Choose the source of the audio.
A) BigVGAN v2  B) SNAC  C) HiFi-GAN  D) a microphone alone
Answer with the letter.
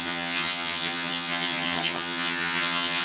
C